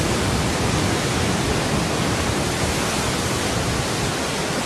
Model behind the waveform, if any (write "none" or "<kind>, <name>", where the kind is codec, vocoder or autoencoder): none